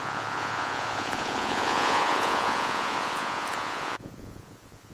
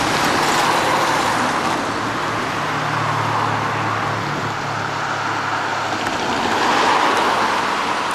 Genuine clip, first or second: second